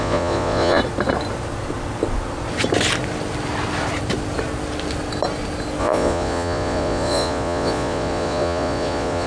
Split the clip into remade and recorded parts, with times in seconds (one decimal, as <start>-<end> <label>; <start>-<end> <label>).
0.0-0.8 remade; 0.8-5.8 recorded; 5.8-9.3 remade